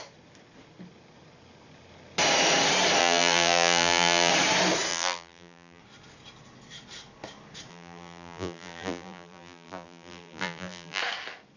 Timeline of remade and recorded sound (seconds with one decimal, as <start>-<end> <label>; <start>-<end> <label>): 0.0-3.0 recorded; 3.0-4.3 remade; 4.3-4.9 recorded; 4.9-5.8 remade; 5.8-7.7 recorded; 7.7-11.0 remade; 11.0-11.6 recorded